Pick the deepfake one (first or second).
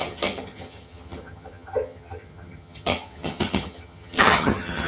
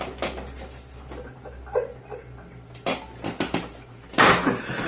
first